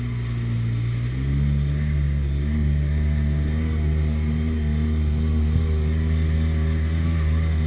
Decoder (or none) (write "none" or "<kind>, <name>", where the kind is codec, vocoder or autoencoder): none